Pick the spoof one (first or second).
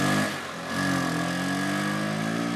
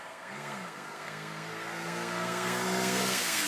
second